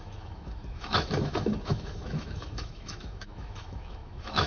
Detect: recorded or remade remade